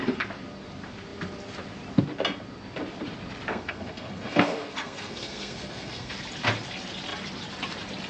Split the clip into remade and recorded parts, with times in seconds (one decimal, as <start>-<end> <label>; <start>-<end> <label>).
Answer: 0.0-3.5 recorded; 3.5-6.1 remade; 6.1-8.1 recorded